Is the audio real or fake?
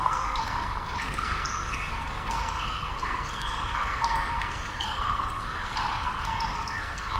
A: fake